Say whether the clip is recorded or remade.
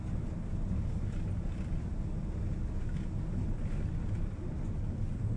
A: recorded